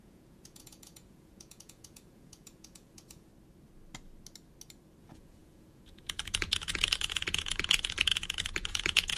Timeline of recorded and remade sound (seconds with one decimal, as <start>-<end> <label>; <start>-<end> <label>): 0.0-3.3 remade; 3.3-5.0 recorded; 5.0-9.2 remade